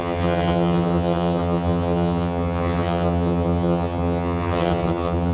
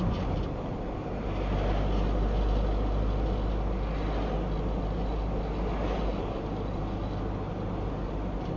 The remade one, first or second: first